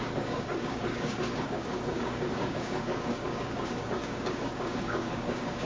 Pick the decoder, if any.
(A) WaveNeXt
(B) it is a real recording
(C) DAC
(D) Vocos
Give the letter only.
C